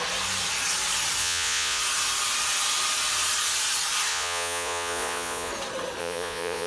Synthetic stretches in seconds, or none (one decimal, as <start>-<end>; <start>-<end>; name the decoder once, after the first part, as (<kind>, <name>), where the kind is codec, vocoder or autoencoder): 1.2-1.8 (vocoder, Vocos); 4.1-5.5; 6.0-6.7